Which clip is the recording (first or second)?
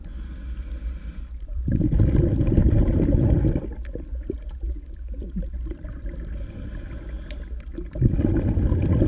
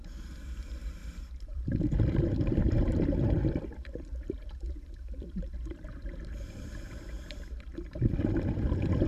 first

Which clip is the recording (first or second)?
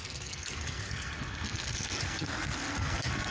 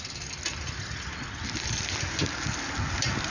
second